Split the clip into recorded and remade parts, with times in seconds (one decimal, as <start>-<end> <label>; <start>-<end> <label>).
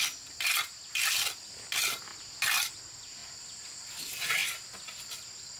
0.0-5.6 recorded